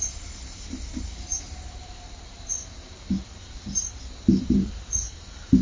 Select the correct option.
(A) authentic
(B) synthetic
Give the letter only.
B